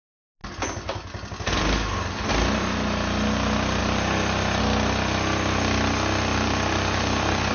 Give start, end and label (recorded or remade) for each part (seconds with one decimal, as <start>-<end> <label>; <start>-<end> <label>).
0.0-3.8 recorded; 3.8-4.6 remade; 4.6-6.3 recorded; 6.3-7.5 remade